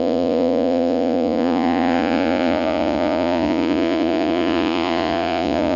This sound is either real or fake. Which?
fake